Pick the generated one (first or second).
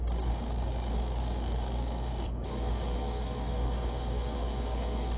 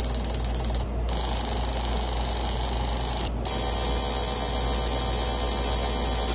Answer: first